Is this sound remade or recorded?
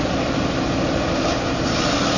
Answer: recorded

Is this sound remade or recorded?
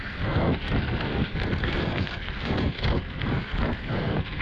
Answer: remade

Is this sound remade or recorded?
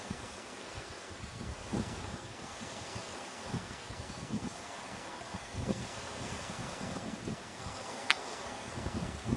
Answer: remade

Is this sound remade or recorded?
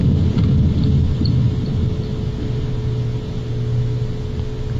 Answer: recorded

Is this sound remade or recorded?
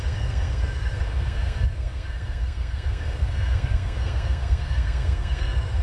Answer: remade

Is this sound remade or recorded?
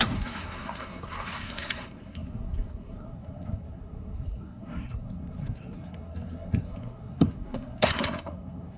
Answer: remade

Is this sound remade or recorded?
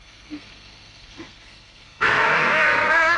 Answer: remade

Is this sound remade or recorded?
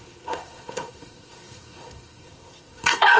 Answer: remade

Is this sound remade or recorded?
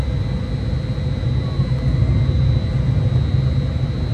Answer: recorded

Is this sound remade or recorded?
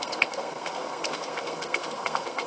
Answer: remade